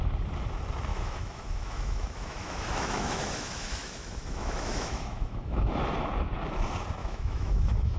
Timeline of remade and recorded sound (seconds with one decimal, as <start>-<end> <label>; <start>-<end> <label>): 0.0-0.9 recorded; 0.9-5.7 remade; 5.7-7.0 recorded; 7.0-8.0 remade